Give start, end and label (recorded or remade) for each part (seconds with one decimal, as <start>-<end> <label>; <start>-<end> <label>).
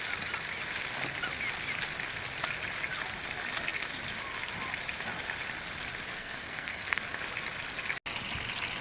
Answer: 0.0-6.1 recorded; 6.1-7.0 remade; 7.0-8.8 recorded